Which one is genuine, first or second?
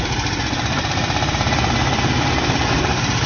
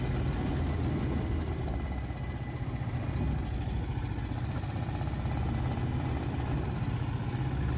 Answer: second